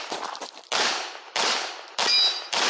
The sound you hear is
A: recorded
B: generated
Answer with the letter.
A